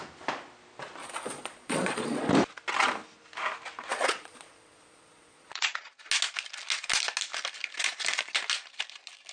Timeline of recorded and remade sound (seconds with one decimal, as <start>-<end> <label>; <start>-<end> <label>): 0.0-1.0 recorded; 1.0-2.3 remade; 2.3-3.9 recorded; 3.9-5.9 remade; 5.9-9.3 recorded